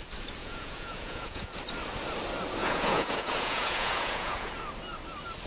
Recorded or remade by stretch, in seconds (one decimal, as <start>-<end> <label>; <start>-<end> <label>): 0.0-0.4 recorded; 0.4-1.6 remade; 1.6-2.6 recorded; 2.6-4.5 remade; 4.5-5.5 recorded